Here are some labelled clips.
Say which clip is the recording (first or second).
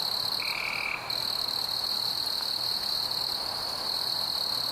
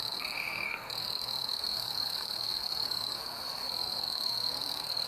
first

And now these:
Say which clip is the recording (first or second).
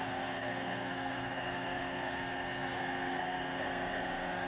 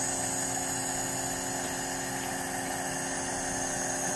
second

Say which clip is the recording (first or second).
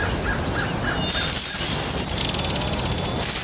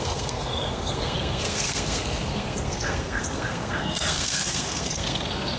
first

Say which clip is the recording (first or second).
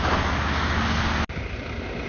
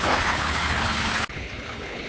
first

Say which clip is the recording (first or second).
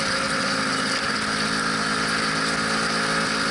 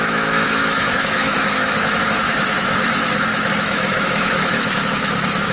first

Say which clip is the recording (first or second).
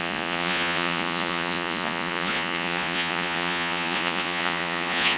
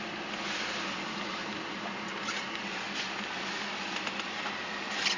second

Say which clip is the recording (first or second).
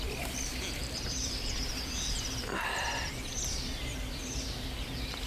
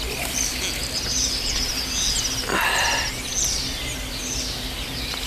second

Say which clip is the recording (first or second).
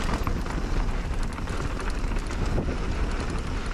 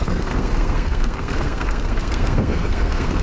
first